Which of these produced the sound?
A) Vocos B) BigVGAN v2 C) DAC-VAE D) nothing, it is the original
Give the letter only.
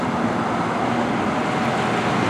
D